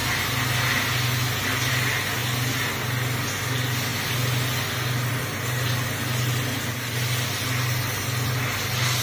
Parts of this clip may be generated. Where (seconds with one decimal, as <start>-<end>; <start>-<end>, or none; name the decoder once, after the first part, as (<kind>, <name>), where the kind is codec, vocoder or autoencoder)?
3.9-8.3 (vocoder, BigVGAN v2)